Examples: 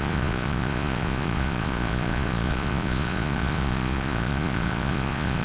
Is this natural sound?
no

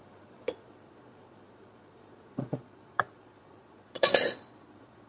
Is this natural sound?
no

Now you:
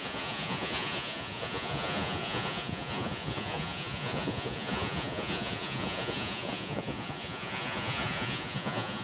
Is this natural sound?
no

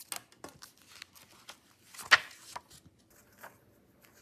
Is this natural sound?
yes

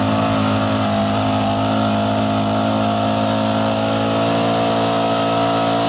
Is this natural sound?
yes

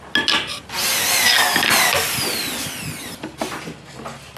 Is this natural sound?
yes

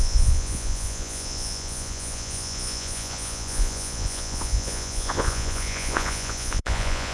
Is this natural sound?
no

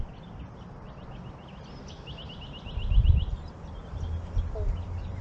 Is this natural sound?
yes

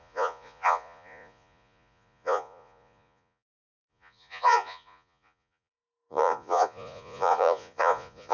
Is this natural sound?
no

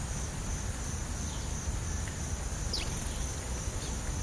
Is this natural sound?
yes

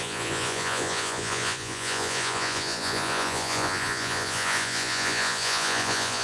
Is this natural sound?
no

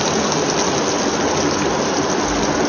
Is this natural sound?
yes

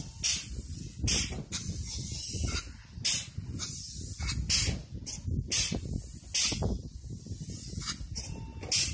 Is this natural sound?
yes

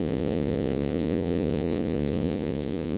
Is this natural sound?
no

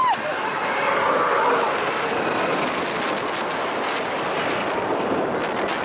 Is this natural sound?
yes